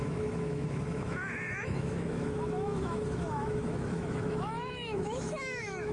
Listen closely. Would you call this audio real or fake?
fake